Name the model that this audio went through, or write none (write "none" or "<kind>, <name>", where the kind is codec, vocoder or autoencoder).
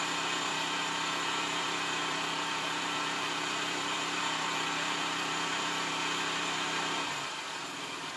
vocoder, BigVGAN v2